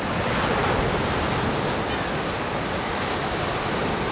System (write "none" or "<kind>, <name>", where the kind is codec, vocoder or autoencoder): none